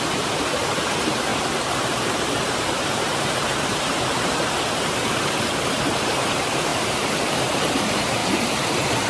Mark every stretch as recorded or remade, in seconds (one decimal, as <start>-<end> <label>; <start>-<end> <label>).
0.0-8.2 remade; 8.2-8.7 recorded; 8.7-9.1 remade